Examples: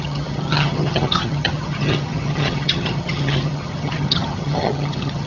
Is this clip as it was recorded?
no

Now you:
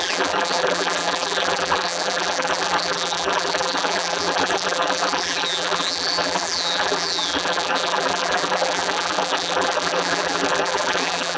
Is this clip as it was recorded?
no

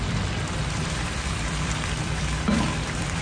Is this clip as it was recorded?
no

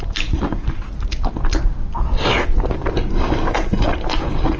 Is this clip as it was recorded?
yes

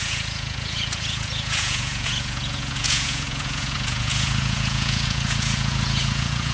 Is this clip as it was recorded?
no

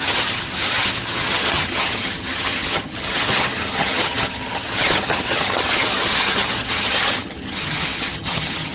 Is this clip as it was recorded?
no